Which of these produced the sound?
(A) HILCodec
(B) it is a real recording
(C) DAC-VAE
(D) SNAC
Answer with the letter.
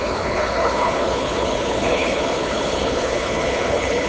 A